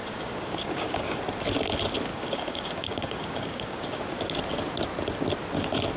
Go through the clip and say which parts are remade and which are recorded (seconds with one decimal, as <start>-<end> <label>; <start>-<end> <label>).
0.0-1.2 remade; 1.2-2.1 recorded; 2.1-4.0 remade; 4.0-6.0 recorded